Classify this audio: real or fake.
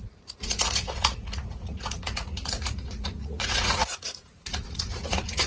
fake